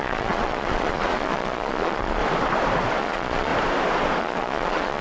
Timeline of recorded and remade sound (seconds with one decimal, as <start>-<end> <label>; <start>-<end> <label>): 0.0-2.2 remade; 2.2-3.0 recorded; 3.0-3.5 remade; 3.5-4.2 recorded; 4.2-5.0 remade